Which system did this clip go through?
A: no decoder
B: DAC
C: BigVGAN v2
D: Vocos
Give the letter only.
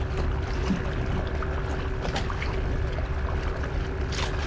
A